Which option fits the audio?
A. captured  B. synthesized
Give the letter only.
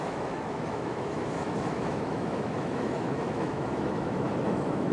B